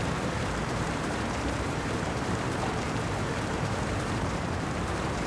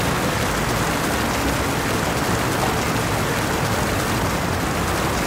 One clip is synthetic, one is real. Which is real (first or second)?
second